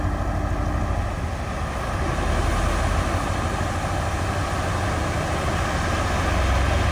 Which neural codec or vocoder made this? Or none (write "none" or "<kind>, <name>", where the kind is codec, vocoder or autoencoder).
none